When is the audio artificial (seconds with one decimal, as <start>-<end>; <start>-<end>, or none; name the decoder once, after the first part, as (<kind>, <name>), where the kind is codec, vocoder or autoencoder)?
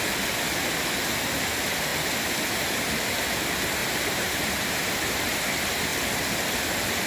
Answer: 3.8-5.0 (vocoder, BigVGAN v2)